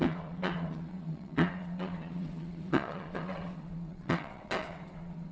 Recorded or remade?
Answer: remade